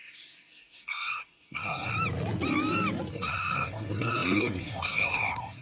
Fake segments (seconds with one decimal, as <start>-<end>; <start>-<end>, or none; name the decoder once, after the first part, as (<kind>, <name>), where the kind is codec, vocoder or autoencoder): 0.0-1.9 (codec, SNAC); 3.1-5.6